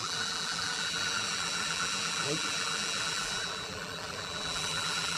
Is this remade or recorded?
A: remade